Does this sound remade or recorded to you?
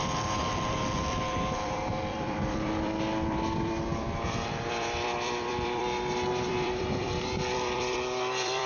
remade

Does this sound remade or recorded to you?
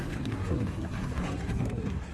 remade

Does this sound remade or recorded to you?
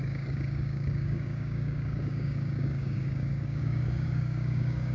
remade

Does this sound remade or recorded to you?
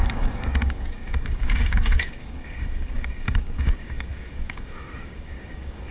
remade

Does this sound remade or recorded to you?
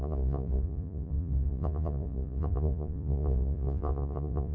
remade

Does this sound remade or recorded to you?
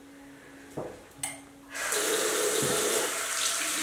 recorded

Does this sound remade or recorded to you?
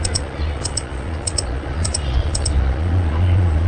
remade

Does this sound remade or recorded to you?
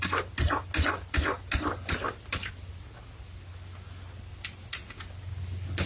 recorded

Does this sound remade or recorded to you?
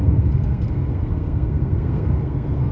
remade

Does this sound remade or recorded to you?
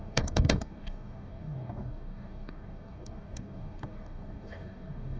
remade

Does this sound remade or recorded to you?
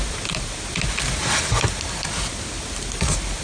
recorded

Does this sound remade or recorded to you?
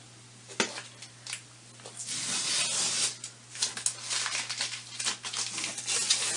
recorded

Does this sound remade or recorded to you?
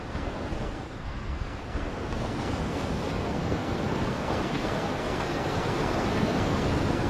remade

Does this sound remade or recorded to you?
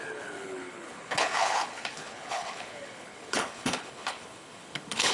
remade